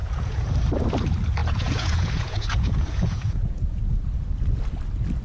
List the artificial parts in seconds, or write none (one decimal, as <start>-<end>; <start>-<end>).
0.0-0.5; 1.4-3.8